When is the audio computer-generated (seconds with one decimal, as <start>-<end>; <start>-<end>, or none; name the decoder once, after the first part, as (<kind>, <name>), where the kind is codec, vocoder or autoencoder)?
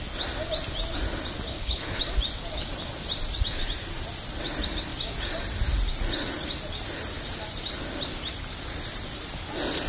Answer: 1.5-2.0 (codec, HILCodec)